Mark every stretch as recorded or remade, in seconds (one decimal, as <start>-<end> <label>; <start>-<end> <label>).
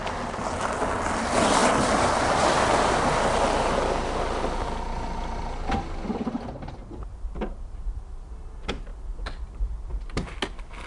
0.0-8.9 recorded; 8.9-10.0 remade; 10.0-10.9 recorded